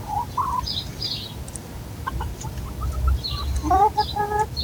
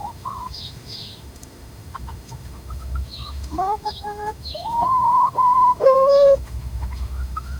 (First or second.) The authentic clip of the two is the first